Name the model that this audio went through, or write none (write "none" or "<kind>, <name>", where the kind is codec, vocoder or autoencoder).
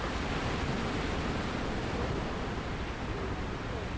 none